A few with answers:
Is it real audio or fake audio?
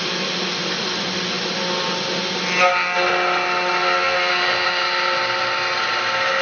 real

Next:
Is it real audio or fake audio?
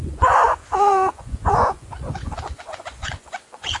fake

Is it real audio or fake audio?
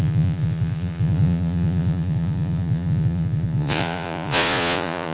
fake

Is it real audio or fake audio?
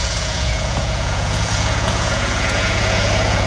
fake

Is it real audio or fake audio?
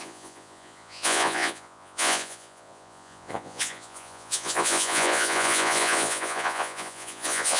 fake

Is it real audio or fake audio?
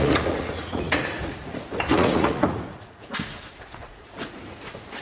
fake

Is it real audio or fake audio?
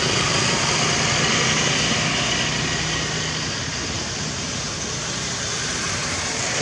real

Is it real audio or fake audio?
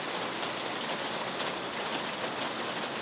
real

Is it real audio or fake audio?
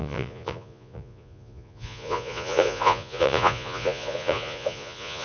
fake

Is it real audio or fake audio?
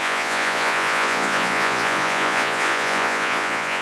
fake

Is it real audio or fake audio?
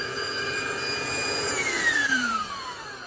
fake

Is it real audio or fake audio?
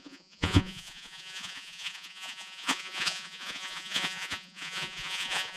fake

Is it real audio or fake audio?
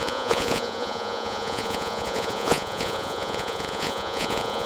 fake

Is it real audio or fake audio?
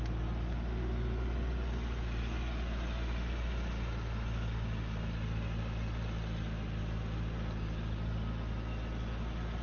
real